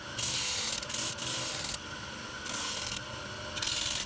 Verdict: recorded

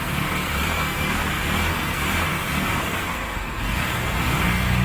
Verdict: remade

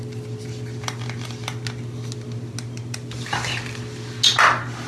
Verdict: recorded